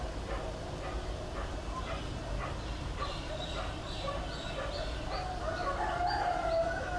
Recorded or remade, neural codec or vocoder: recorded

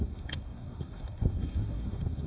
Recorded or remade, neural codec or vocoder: remade, codec, SNAC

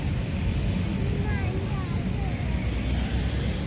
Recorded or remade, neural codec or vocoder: recorded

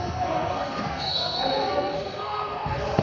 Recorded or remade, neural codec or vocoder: remade, codec, SNAC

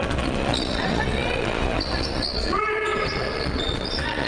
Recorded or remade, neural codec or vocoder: remade, vocoder, Vocos